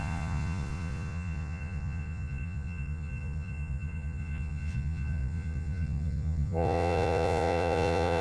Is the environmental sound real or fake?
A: fake